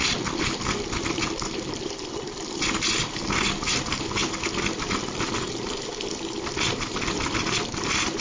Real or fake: real